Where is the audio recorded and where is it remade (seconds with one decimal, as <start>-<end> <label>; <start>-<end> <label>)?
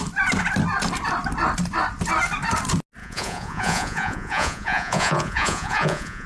0.0-3.0 recorded; 3.0-6.3 remade